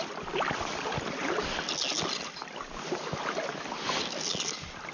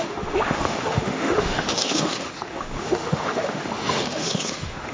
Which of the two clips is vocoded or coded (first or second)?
second